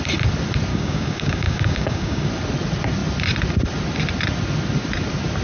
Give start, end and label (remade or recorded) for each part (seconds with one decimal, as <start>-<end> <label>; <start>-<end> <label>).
0.0-0.7 recorded; 0.7-2.3 remade; 2.3-5.4 recorded